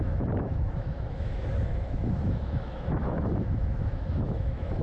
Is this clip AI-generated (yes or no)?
yes